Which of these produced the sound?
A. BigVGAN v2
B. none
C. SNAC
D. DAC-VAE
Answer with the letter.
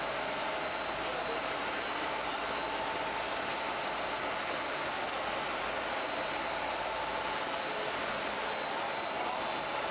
B